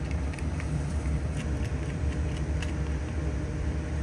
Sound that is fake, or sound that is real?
fake